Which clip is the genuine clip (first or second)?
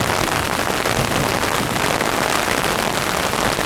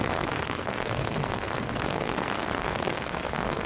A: first